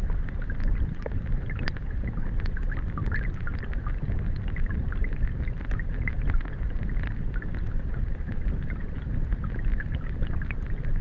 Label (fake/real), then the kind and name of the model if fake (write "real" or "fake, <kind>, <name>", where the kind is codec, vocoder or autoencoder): real